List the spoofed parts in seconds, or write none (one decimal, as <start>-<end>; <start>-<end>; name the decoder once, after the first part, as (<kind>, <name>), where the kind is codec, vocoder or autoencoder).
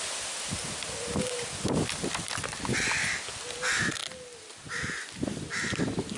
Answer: none